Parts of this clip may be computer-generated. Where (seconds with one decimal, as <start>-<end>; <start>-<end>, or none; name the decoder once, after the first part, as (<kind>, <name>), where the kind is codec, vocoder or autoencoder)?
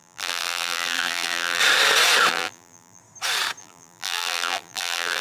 0.0-1.6 (vocoder, BigVGAN v2); 2.3-3.0; 3.6-5.2